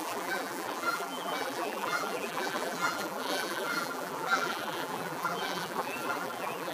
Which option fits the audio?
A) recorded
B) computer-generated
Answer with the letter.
B